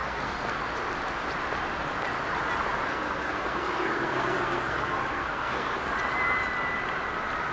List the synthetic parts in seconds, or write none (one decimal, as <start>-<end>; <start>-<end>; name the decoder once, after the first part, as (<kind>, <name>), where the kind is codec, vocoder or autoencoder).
0.0-0.6 (codec, SNAC); 2.9-5.9

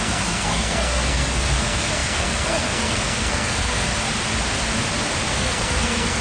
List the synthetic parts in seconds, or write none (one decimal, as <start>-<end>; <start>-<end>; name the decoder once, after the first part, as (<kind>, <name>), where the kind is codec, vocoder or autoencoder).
0.0-3.9 (codec, SNAC); 5.3-6.2

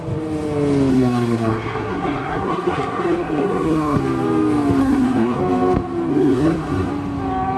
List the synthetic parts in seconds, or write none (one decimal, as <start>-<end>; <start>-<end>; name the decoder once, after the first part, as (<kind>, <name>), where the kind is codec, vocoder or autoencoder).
0.9-4.0 (codec, SNAC); 4.8-5.4; 6.1-6.9

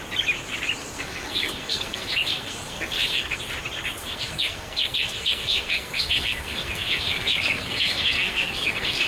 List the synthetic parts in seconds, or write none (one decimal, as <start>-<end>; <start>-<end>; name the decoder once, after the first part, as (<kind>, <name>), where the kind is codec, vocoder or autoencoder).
0.8-3.4 (codec, SNAC); 4.0-9.1

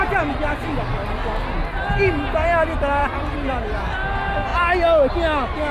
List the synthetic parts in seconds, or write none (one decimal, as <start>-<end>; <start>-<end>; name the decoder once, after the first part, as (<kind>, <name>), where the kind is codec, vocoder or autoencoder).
none

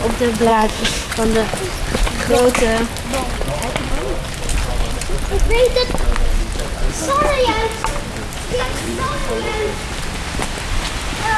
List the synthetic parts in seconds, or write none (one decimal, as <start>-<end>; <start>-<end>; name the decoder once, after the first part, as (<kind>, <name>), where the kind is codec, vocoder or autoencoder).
0.5-1.1 (codec, SNAC)

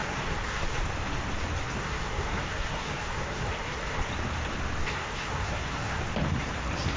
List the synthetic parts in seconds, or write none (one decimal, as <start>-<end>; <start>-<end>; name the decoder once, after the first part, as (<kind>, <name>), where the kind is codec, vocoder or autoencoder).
0.0-0.8 (codec, SNAC); 1.8-4.1; 4.8-6.0

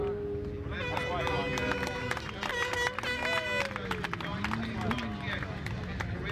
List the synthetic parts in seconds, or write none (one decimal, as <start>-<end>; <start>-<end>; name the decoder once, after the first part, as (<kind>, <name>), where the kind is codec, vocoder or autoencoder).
none